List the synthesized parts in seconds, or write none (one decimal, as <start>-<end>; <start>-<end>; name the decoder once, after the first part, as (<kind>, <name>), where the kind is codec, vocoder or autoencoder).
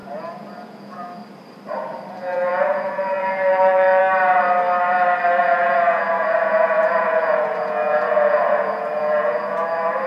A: 0.0-1.2 (vocoder, Vocos); 2.1-4.0; 5.4-10.1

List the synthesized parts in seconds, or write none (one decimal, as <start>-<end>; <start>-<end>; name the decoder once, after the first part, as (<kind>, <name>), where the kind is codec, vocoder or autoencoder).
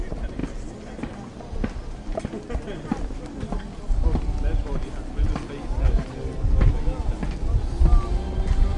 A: none